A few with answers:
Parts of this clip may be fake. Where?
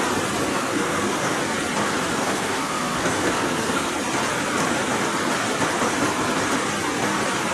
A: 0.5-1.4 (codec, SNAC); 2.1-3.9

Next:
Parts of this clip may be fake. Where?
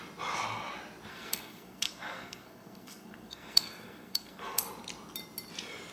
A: 1.1-4.6 (codec, SNAC)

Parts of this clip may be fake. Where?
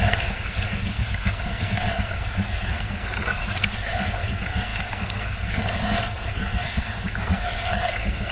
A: 0.0-8.3 (codec, SNAC)